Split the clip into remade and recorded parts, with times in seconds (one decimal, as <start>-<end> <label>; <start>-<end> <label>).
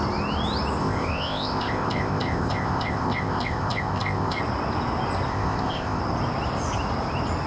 0.0-0.8 recorded; 0.8-4.4 remade; 4.4-5.3 recorded; 5.3-6.0 remade; 6.0-7.5 recorded